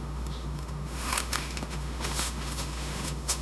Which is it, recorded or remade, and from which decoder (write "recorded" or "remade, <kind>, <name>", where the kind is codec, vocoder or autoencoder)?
remade, autoencoder, DAC-VAE